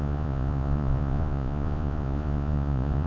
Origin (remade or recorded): remade